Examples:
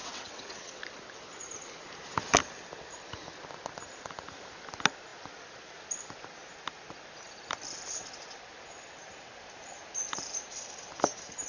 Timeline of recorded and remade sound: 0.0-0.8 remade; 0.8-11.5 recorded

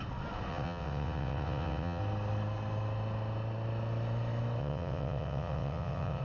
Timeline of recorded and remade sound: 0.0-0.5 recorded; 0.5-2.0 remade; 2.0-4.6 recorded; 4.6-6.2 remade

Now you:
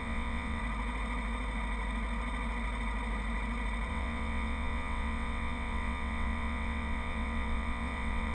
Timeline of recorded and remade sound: 0.0-0.6 remade; 0.6-3.9 recorded; 3.9-8.3 remade

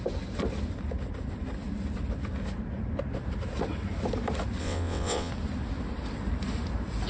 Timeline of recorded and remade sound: 0.0-4.6 recorded; 4.6-5.3 remade; 5.3-7.1 recorded

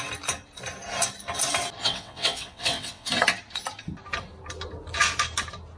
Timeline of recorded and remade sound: 0.0-1.8 recorded; 1.8-3.1 remade; 3.1-5.8 recorded

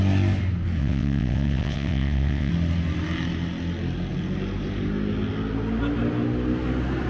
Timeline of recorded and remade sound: 0.0-0.8 recorded; 0.8-2.5 remade; 2.5-7.1 recorded

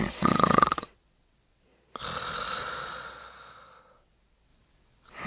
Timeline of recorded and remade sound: 0.0-1.7 remade; 1.7-3.8 recorded; 3.8-5.3 remade

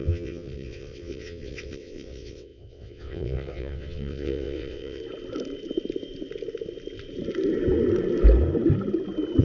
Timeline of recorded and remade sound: 0.0-5.0 remade; 5.0-9.4 recorded